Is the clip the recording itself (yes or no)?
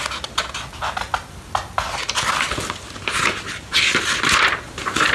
yes